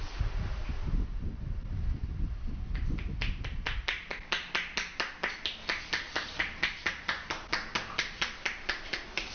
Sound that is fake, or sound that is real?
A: real